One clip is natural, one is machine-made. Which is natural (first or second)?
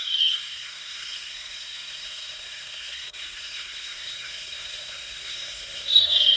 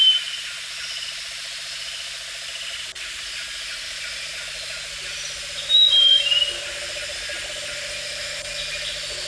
second